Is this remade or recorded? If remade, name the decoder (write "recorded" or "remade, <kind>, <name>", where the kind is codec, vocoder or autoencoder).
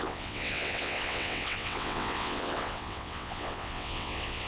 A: remade, vocoder, WaveNeXt